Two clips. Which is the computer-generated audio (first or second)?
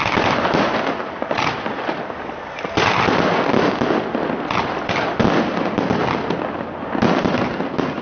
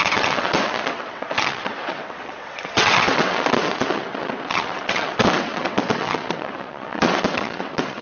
second